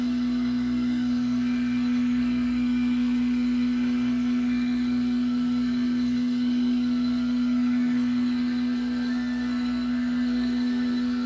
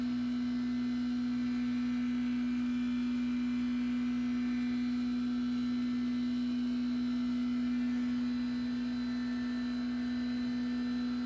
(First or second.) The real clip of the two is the second